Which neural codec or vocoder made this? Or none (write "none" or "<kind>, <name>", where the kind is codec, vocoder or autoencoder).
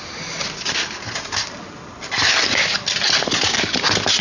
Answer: none